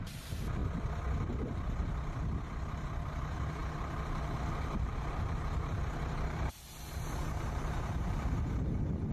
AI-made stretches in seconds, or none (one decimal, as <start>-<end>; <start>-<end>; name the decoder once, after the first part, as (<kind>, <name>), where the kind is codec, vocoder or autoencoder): 0.0-0.6 (vocoder, BigVGAN v2); 3.1-9.1